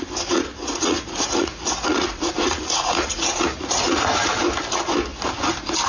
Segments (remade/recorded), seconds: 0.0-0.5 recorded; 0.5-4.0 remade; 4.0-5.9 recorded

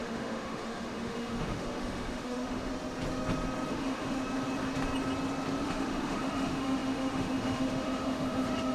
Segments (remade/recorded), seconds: 0.0-2.7 remade; 2.7-3.7 recorded; 3.7-4.2 remade; 4.2-5.6 recorded; 5.6-8.7 remade

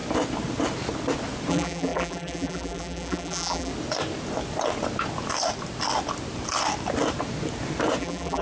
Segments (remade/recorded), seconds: 0.0-1.5 recorded; 1.5-3.7 remade; 3.7-8.0 recorded; 8.0-8.4 remade

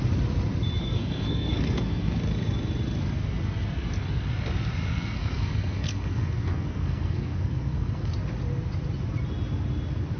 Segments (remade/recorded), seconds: 0.0-0.8 recorded; 0.8-2.2 remade; 2.2-4.9 recorded; 4.9-8.1 remade; 8.1-10.2 recorded

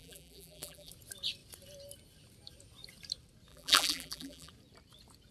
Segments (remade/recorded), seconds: 0.0-0.9 remade; 0.9-3.5 recorded; 3.5-4.5 remade; 4.5-5.3 recorded

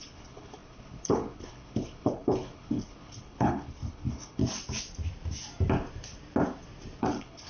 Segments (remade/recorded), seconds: 0.0-4.4 remade; 4.4-7.0 recorded; 7.0-7.5 remade

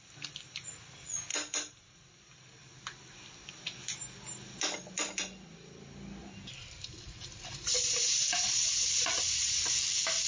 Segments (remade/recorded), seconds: 0.0-6.2 recorded; 6.2-9.6 remade; 9.6-10.3 recorded

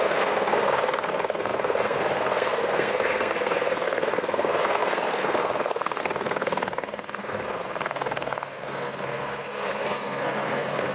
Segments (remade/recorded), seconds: 0.0-10.9 remade